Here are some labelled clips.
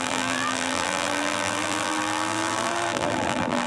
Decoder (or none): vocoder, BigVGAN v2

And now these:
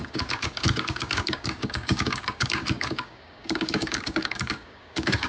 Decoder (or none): codec, DAC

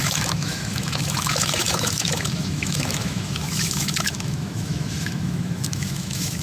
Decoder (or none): autoencoder, DAC-VAE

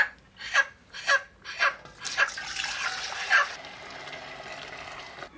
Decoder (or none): none